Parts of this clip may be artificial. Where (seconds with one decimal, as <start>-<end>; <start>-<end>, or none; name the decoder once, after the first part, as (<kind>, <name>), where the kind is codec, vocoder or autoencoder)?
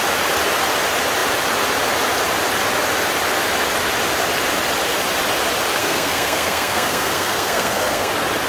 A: 5.8-8.1 (codec, SNAC)